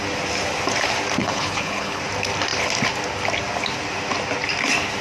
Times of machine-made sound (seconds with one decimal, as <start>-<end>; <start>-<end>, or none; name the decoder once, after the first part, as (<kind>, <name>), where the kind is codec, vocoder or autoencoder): 1.2-2.0 (codec, HILCodec)

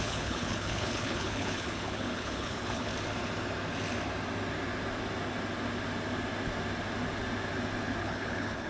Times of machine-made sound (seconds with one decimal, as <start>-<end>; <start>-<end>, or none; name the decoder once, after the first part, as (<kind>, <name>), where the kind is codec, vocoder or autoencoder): 0.0-2.9 (codec, HILCodec); 8.0-8.7

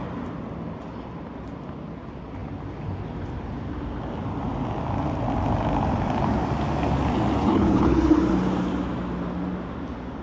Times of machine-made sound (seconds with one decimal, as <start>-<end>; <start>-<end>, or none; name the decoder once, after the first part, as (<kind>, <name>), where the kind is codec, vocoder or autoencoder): 7.4-8.3 (codec, HILCodec)

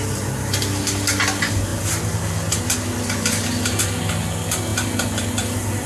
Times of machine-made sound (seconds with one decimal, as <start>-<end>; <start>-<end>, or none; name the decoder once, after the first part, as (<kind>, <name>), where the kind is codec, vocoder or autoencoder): none